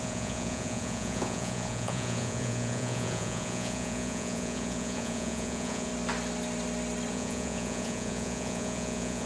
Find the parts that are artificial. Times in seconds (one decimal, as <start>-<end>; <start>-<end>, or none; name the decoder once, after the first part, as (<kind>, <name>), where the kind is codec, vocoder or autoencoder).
0.0-5.9 (vocoder, Vocos); 7.1-9.3